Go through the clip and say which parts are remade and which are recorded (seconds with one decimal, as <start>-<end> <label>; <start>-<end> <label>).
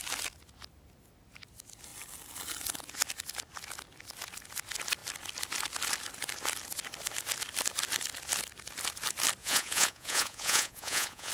0.0-9.4 recorded; 9.4-11.3 remade